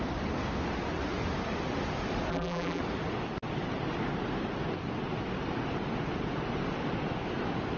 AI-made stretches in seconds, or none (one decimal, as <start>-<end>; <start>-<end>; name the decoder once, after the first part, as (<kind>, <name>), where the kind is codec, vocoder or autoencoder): 2.3-2.8 (vocoder, BigVGAN v2)